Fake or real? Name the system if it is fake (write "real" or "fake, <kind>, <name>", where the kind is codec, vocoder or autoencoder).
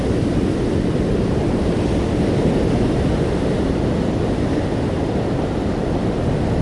real